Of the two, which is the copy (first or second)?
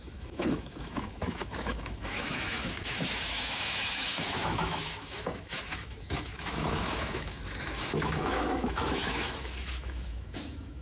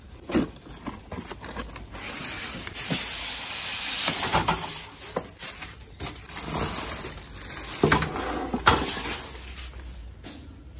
first